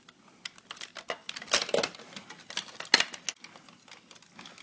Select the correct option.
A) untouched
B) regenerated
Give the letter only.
A